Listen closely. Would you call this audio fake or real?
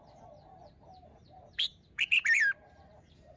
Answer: fake